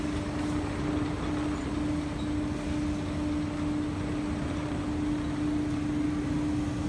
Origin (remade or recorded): recorded